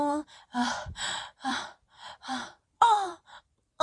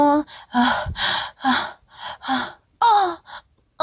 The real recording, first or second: second